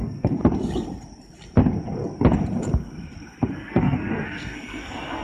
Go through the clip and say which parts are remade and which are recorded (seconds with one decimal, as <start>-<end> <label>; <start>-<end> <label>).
0.0-0.4 remade; 0.4-3.5 recorded; 3.5-5.2 remade